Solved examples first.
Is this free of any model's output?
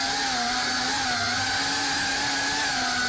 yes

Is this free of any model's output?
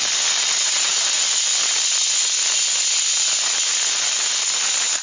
yes